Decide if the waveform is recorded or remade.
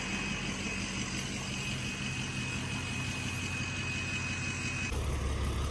recorded